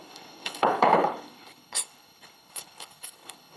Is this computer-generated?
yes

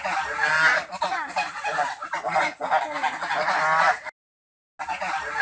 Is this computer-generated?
no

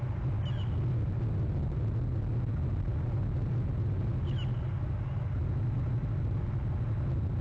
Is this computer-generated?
no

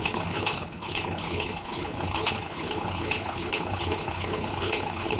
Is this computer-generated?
yes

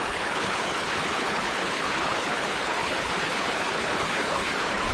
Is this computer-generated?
yes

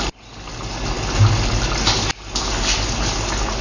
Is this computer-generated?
no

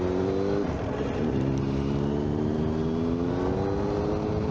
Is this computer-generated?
no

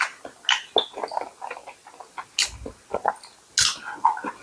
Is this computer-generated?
no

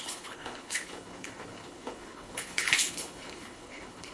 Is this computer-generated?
yes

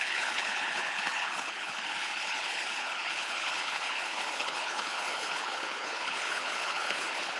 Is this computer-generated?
yes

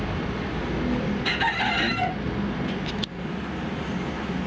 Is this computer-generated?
no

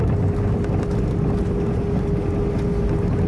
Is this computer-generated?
no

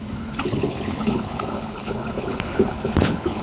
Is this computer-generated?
yes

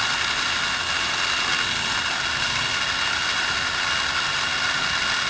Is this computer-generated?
no